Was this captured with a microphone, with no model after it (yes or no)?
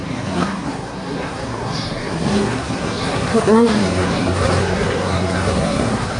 no